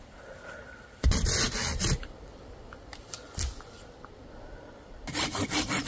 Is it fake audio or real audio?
fake